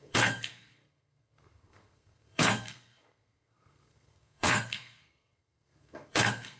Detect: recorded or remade remade